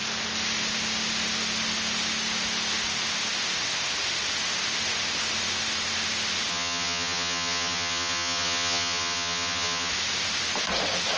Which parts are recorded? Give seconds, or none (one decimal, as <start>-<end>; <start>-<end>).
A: 0.0-6.5; 9.9-11.2